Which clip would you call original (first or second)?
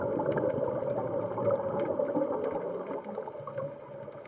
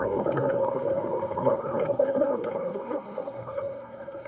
first